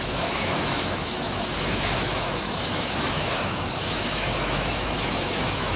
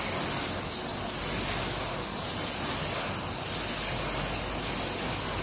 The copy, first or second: first